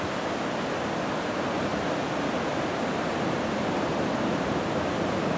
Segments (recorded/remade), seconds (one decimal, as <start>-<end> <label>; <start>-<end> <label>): 0.0-1.7 recorded; 1.7-4.9 remade; 4.9-5.4 recorded